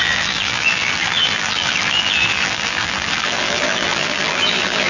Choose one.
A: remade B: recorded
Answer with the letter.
A